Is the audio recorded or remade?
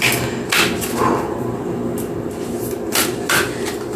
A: recorded